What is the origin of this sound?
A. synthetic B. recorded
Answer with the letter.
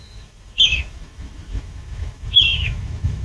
A